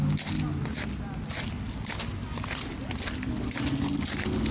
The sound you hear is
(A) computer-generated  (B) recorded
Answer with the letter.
B